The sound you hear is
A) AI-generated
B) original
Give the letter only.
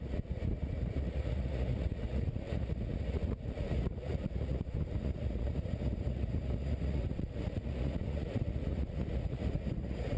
A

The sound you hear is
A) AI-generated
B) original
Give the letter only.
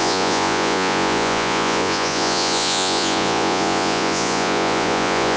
A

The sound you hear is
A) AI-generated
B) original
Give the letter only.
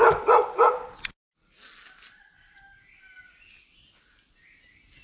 B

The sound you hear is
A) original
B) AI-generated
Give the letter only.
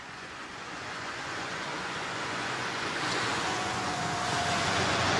B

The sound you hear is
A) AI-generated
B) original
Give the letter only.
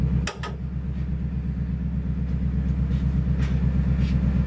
B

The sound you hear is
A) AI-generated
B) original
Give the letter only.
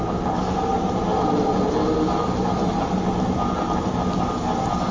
B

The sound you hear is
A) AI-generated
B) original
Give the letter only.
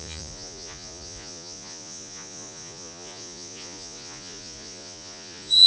A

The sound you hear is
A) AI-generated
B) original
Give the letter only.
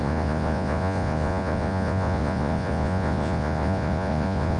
A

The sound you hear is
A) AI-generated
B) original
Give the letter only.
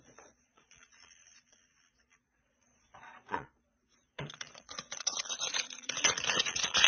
A